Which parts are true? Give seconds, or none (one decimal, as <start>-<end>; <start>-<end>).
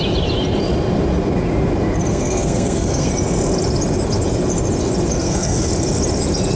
0.0-2.1; 3.1-5.2; 5.7-6.6